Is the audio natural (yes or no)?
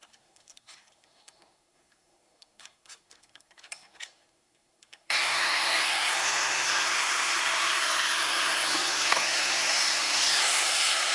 no